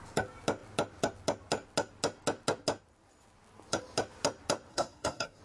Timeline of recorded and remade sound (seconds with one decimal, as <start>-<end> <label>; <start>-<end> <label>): 0.0-4.7 recorded; 4.7-5.4 remade